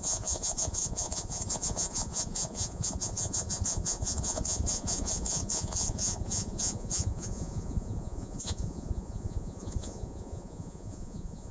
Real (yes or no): no